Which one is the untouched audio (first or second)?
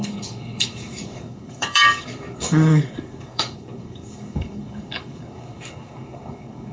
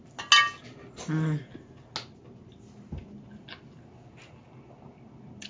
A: second